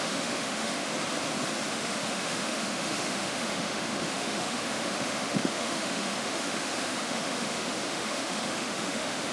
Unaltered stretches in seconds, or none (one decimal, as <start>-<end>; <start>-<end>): 0.9-1.7